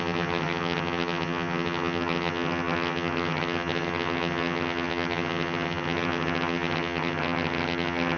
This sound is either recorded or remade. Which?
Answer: remade